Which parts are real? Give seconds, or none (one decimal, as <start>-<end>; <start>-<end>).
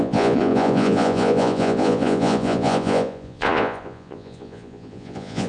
none